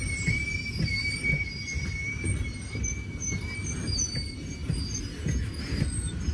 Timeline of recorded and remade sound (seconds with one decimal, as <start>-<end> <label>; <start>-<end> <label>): 0.0-6.3 recorded